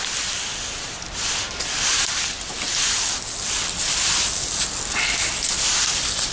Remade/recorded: recorded